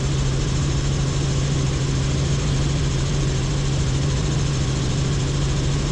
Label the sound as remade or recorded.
remade